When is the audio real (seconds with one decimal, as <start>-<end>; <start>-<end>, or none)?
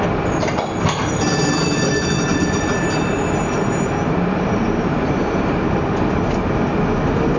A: 0.0-2.3; 5.5-7.4